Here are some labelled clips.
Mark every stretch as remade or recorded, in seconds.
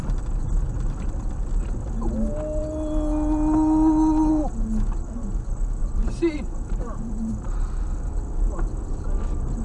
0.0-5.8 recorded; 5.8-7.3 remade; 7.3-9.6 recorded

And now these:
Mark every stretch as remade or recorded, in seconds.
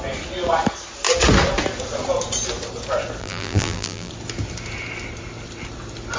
0.0-3.2 recorded; 3.2-4.1 remade; 4.1-6.2 recorded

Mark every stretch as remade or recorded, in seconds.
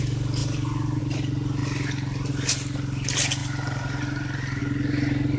0.0-0.4 recorded; 0.4-1.0 remade; 1.0-3.4 recorded; 3.4-4.6 remade; 4.6-5.4 recorded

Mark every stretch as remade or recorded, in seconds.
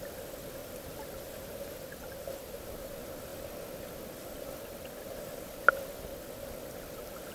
0.0-0.6 recorded; 0.6-2.6 remade; 2.6-7.3 recorded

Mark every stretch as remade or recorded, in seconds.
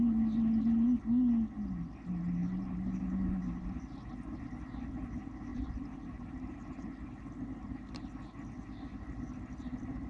0.0-2.4 recorded; 2.4-3.0 remade; 3.0-5.5 recorded; 5.5-6.8 remade; 6.8-10.1 recorded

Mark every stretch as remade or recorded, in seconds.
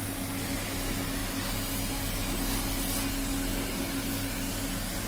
0.0-5.1 recorded